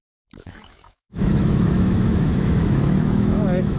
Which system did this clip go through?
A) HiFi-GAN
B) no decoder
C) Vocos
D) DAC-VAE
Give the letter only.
D